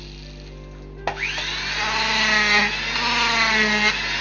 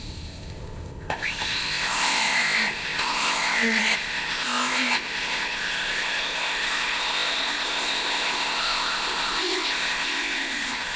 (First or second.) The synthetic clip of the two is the second